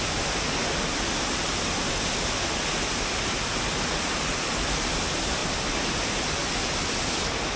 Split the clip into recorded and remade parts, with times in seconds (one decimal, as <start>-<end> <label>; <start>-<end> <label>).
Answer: 0.0-7.6 recorded